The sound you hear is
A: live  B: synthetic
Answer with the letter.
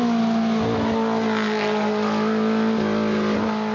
A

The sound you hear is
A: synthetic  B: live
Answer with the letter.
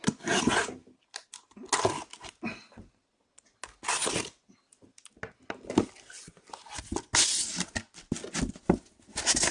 B